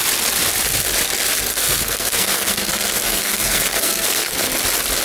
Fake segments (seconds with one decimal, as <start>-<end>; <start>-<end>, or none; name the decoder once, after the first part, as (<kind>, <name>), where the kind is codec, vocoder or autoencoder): 1.5-4.5 (codec, SNAC)